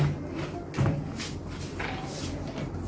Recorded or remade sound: recorded